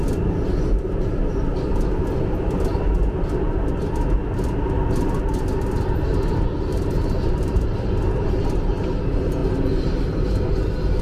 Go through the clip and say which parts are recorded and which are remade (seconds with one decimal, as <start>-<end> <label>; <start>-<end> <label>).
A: 0.0-6.5 recorded; 6.5-7.9 remade; 7.9-11.0 recorded